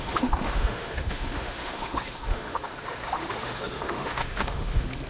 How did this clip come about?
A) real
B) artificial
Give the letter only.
B